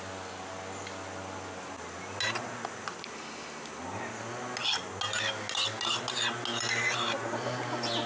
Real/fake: real